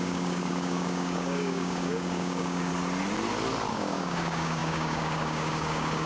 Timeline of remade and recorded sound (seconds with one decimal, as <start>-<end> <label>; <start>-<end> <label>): 0.0-2.7 remade; 2.7-3.7 recorded; 3.7-6.1 remade